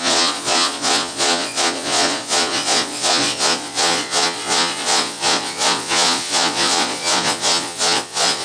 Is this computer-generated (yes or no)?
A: yes